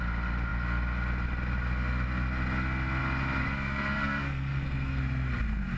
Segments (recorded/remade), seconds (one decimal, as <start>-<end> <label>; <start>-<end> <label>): 0.0-3.4 recorded; 3.4-5.0 remade; 5.0-5.8 recorded